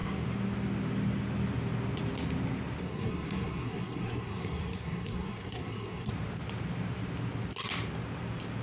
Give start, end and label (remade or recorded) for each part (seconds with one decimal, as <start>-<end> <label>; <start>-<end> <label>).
0.0-2.8 recorded; 2.8-6.1 remade; 6.1-8.6 recorded